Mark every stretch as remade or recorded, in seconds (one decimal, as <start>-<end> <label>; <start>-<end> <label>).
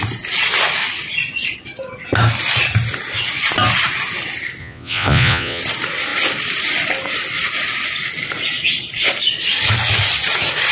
0.0-4.6 recorded; 4.6-5.6 remade; 5.6-10.7 recorded